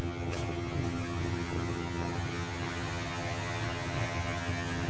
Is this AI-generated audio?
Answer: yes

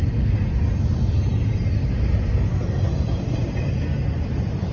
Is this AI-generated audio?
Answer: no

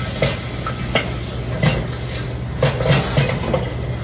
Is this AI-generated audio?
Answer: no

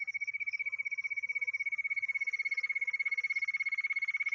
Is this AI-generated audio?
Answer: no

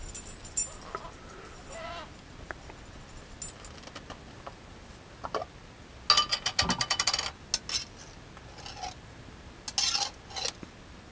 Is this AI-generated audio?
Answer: no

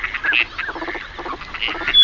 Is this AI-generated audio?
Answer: no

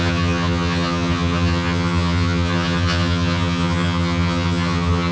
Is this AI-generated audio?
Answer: yes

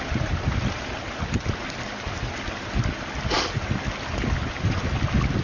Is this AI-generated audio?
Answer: no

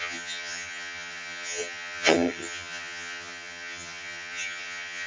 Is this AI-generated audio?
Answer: yes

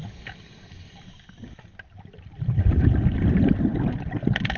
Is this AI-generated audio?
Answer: no